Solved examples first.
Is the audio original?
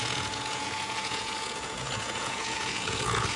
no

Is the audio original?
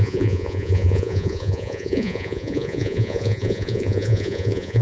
no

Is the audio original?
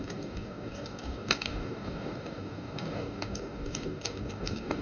no